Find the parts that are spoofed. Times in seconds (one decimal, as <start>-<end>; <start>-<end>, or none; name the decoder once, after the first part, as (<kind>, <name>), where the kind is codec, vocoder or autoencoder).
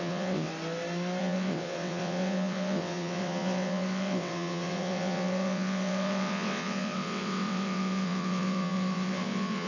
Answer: 0.0-0.5 (vocoder, WaveNeXt); 1.2-9.7